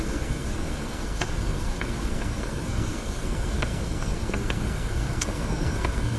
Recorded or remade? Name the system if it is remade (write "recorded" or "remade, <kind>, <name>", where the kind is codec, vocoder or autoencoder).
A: remade, codec, SNAC